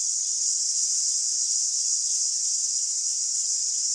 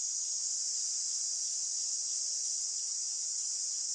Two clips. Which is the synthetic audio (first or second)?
first